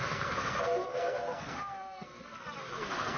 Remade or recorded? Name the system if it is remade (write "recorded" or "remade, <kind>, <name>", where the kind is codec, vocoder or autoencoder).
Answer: remade, codec, SNAC